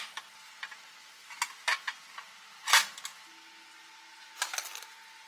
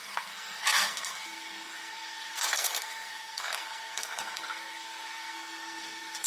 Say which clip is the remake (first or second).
second